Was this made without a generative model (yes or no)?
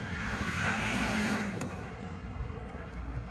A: no